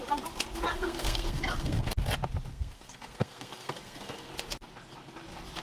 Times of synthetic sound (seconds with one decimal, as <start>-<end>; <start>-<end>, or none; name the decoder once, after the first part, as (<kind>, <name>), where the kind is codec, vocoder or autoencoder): 0.7-2.0 (codec, SNAC); 2.5-4.3